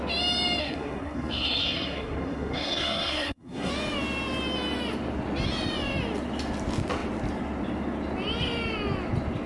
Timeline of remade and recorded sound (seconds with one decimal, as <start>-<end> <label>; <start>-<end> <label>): 0.0-0.6 recorded; 0.6-3.7 remade; 3.7-9.5 recorded